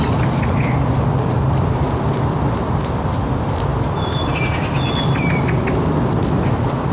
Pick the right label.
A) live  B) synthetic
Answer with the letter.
A